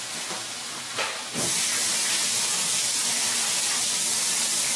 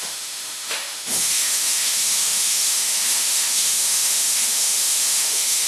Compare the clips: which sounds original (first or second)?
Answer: first